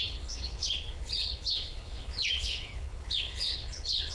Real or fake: fake